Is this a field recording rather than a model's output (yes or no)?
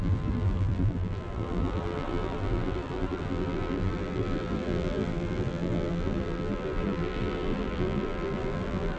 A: no